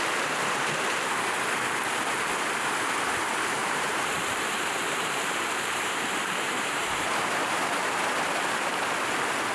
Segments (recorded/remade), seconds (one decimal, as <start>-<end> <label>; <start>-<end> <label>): 0.0-3.6 recorded; 3.6-8.4 remade; 8.4-9.5 recorded